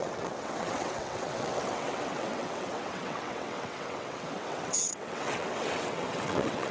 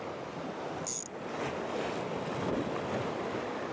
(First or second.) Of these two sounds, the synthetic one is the first